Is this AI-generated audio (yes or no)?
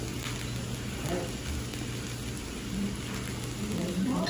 no